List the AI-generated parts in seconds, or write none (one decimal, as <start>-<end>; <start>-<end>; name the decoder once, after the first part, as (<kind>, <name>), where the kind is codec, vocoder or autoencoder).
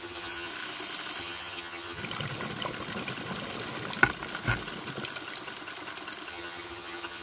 0.0-0.5 (vocoder, HiFi-GAN); 1.2-2.0; 6.3-7.2